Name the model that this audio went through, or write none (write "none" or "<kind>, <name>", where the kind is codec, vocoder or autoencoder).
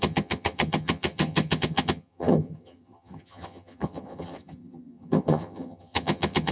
vocoder, HiFi-GAN